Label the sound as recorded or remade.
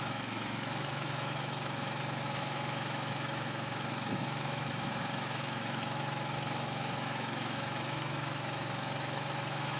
remade